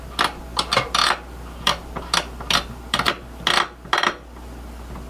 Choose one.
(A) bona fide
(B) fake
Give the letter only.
A